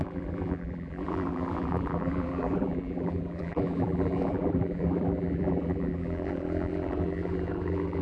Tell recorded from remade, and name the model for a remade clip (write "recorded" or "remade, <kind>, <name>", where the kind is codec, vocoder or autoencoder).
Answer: remade, vocoder, BigVGAN v2